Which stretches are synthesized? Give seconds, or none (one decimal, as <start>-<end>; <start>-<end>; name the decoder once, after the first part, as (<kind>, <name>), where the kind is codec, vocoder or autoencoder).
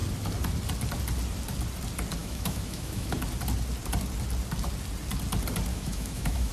2.2-3.2 (autoencoder, DAC-VAE); 5.7-6.5